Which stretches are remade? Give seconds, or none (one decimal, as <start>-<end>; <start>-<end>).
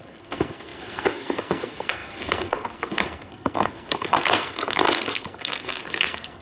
0.0-6.4